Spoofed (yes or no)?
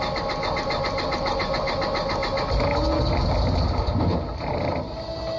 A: no